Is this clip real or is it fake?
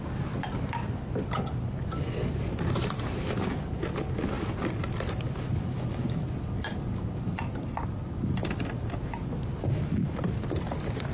real